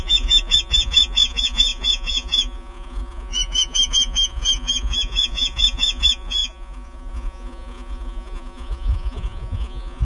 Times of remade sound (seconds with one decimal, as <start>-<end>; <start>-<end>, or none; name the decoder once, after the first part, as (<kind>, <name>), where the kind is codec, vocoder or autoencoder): 0.0-10.0 (vocoder, Vocos)